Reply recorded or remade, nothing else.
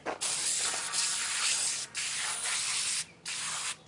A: recorded